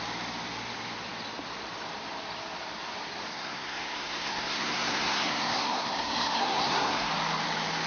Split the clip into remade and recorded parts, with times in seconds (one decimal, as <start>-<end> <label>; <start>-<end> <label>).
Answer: 0.0-3.3 recorded; 3.3-7.1 remade; 7.1-7.9 recorded